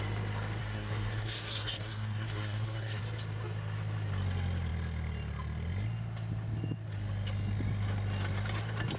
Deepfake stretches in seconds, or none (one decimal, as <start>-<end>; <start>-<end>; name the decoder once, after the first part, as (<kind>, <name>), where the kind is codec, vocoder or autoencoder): 0.6-3.0 (codec, SNAC)

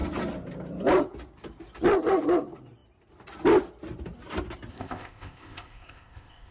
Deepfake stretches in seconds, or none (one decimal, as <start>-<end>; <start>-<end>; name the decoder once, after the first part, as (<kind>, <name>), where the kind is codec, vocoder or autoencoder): 4.7-6.5 (codec, ZipCodec)

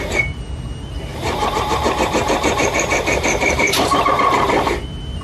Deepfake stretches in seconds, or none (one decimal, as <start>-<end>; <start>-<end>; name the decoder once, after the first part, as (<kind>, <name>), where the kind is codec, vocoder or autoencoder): 1.1-4.1 (vocoder, BigVGAN v2)

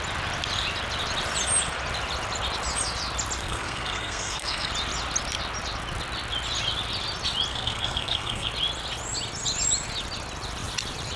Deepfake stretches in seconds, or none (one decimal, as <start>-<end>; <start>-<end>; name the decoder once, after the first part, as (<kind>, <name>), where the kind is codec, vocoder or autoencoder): 3.4-4.7 (codec, SNAC); 7.5-8.5

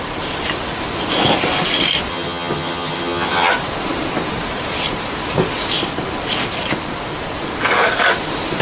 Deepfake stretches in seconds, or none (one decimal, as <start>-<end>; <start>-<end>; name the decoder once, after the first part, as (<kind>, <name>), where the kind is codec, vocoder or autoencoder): 2.1-3.5 (vocoder, HiFi-GAN)

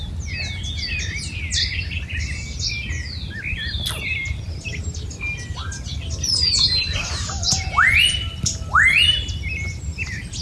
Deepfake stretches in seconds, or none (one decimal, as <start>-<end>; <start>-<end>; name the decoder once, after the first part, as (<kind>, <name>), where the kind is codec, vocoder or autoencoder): none

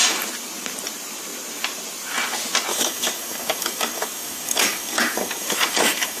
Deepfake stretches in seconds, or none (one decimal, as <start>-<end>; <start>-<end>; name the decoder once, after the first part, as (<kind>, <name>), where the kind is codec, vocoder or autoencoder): 2.7-6.2 (codec, DAC)

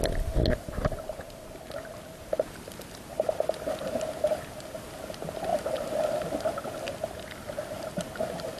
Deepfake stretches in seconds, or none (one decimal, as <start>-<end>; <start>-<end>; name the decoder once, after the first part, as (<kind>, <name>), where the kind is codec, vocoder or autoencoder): none